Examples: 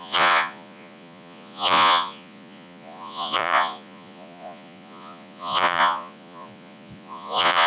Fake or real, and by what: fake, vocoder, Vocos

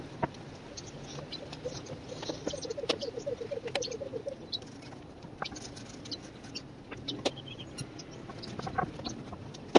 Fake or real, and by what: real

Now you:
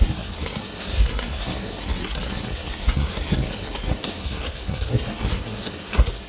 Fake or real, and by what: fake, codec, SNAC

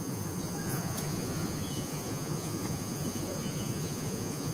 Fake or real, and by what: fake, vocoder, Vocos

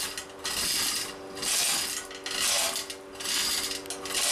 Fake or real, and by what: real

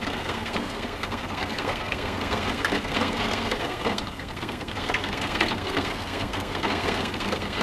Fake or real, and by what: fake, codec, SNAC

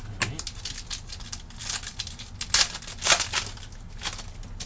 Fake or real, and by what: real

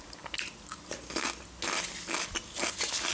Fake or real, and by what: real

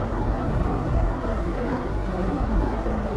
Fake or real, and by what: fake, codec, SNAC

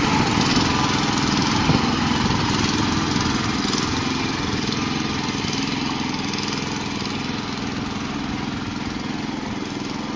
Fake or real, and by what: real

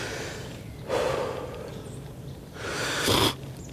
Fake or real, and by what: fake, vocoder, BigVGAN v2